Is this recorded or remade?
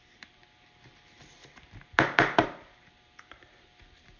remade